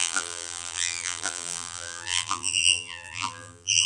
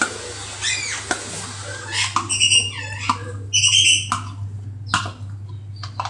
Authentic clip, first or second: second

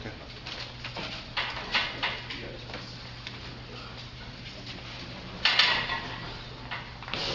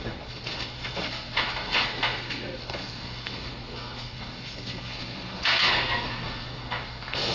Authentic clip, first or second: first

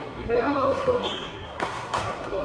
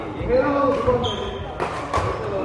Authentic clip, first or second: second